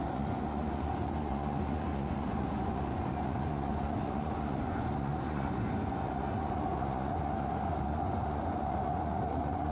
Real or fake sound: fake